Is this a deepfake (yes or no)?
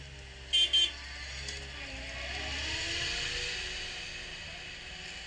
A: no